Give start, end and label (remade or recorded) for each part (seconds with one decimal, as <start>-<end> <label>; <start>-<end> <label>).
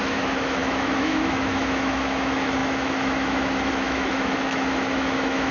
0.0-5.5 remade